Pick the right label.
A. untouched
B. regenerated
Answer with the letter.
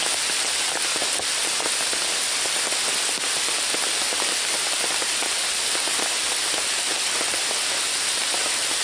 A